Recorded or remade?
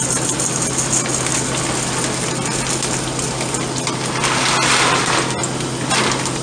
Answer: recorded